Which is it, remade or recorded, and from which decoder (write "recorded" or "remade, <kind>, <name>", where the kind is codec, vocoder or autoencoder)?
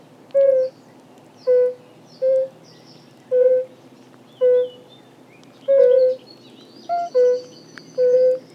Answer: recorded